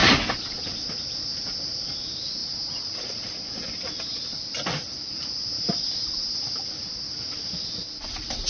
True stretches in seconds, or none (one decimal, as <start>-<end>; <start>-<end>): 0.0-8.5

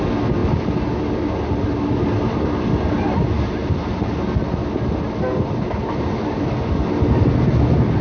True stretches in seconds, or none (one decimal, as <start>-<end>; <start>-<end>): 0.0-8.0

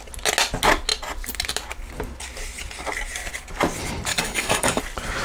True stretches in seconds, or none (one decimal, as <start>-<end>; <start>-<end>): 0.0-4.1; 4.8-5.2